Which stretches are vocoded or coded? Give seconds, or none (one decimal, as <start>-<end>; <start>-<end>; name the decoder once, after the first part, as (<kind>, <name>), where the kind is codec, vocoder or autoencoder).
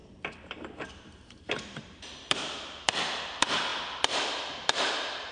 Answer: 0.0-5.3 (vocoder, BigVGAN v2)